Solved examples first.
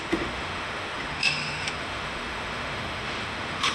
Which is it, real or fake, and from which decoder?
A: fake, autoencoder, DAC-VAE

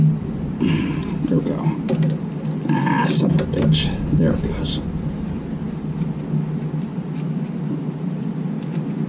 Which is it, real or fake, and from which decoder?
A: real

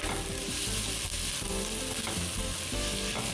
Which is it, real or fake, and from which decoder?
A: real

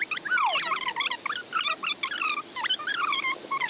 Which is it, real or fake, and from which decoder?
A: real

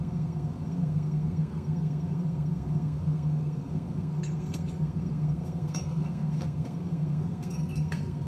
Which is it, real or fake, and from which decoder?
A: fake, codec, SNAC